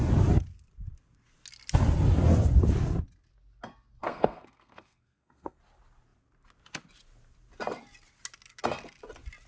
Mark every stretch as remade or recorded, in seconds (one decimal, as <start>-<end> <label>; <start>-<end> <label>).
0.0-4.0 recorded; 4.0-5.6 remade; 5.6-9.5 recorded